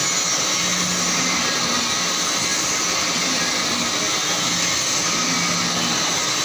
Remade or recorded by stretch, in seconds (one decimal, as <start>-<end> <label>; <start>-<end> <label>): 0.0-6.4 recorded